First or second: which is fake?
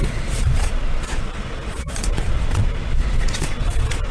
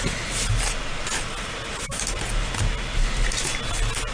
first